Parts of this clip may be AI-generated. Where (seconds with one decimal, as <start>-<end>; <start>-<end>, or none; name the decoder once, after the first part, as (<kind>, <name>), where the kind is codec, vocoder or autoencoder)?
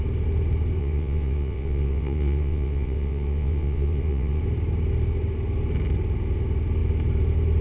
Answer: 0.8-4.4 (vocoder, WaveNeXt)